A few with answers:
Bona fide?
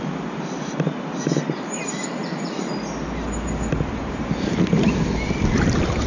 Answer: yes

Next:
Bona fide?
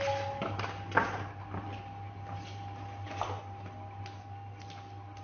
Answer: yes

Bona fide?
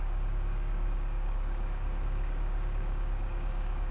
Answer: no